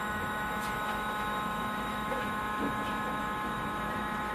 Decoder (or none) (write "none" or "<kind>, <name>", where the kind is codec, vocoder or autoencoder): autoencoder, DAC-VAE